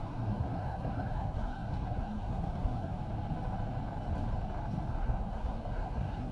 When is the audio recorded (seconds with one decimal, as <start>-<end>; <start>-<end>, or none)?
3.0-4.9